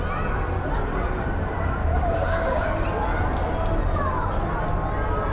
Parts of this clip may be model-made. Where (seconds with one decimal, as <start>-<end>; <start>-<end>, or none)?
1.8-2.7